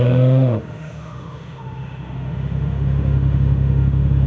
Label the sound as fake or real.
fake